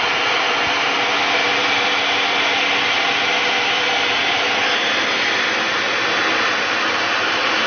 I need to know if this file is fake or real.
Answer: real